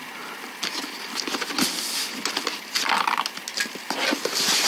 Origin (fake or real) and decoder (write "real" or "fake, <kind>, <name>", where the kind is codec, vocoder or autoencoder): real